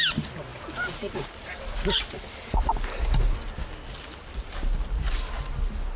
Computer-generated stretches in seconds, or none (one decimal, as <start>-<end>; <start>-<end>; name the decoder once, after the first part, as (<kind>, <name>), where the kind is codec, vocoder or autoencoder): none